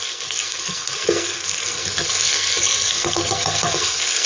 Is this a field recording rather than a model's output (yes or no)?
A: no